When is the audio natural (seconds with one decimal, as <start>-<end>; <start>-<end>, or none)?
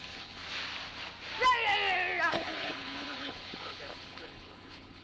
0.4-2.3